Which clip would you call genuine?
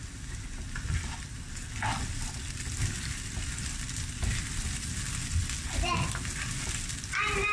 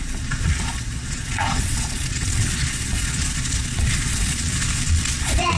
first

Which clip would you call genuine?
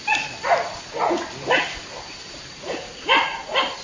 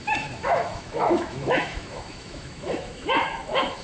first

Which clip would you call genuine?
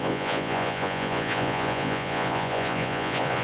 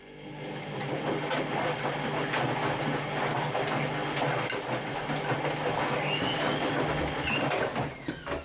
second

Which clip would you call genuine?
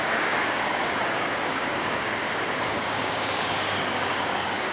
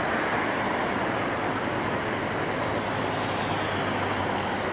second